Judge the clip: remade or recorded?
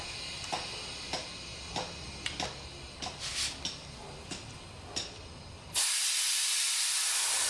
recorded